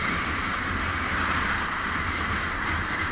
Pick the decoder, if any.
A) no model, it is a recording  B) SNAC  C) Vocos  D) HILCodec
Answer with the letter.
A